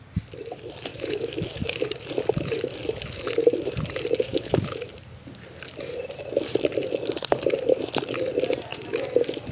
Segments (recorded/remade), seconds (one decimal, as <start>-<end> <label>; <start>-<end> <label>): 0.0-0.9 recorded; 0.9-1.8 remade; 1.8-4.3 recorded; 4.3-4.9 remade; 4.9-9.5 recorded